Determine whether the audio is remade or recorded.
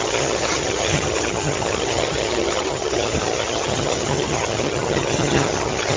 remade